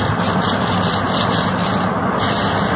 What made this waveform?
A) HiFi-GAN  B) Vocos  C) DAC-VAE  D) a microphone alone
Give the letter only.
D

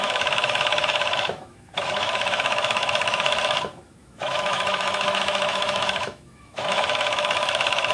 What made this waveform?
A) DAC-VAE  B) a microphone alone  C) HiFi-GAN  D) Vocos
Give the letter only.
A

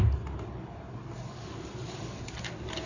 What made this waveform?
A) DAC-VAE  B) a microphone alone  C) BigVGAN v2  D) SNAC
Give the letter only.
B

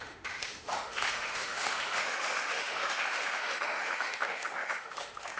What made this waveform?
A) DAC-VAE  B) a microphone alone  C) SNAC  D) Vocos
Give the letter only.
A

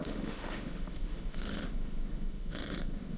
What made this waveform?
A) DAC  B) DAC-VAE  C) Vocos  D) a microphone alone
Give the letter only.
B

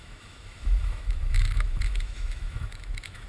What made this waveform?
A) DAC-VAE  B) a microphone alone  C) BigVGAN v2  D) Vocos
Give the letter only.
A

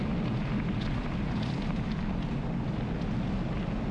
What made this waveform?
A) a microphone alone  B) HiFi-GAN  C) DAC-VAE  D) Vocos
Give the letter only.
A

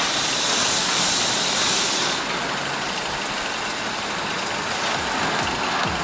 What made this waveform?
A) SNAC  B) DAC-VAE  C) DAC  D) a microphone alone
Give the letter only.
D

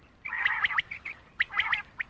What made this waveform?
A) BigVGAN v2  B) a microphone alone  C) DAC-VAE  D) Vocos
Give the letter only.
B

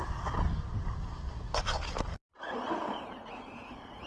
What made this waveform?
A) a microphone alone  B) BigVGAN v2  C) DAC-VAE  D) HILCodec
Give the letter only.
A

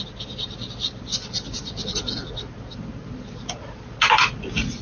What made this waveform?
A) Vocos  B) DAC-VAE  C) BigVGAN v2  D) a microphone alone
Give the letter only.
D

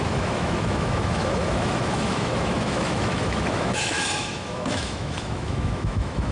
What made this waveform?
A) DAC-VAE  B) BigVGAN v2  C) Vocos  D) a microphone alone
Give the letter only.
A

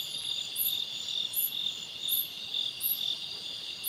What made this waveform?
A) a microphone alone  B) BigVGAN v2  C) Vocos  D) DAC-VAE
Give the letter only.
A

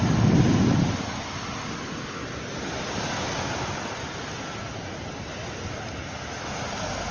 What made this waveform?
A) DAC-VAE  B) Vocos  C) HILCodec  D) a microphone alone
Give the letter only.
D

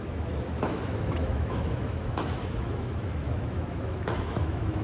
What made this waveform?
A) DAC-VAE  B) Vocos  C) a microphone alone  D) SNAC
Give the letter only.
A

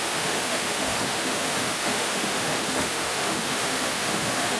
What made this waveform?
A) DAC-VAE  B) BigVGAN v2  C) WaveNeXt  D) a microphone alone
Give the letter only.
A